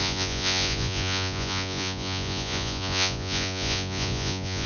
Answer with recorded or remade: remade